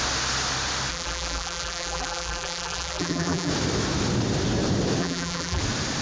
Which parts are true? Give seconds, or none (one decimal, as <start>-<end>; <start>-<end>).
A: 0.0-0.9; 3.5-5.0; 5.6-6.0